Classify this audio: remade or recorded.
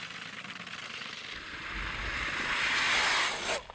recorded